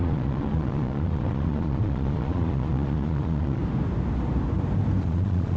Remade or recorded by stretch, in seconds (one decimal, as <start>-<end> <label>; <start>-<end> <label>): 0.0-3.6 remade; 3.6-5.0 recorded; 5.0-5.6 remade